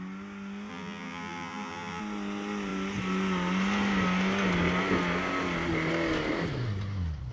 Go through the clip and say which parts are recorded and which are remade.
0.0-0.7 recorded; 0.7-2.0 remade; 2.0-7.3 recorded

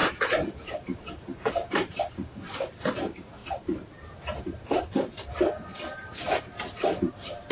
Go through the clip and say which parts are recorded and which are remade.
0.0-3.4 remade; 3.4-4.4 recorded; 4.4-7.5 remade

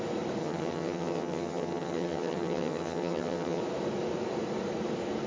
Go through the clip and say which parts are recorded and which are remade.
0.0-0.4 recorded; 0.4-3.6 remade; 3.6-5.3 recorded